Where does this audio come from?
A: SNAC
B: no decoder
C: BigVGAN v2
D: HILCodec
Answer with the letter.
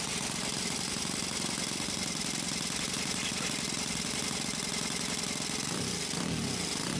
B